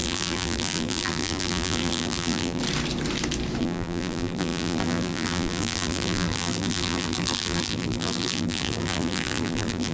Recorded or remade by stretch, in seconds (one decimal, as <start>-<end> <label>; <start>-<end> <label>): 0.0-2.6 remade; 2.6-3.6 recorded; 3.6-9.9 remade